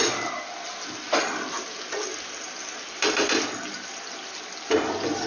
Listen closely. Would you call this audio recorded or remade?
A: recorded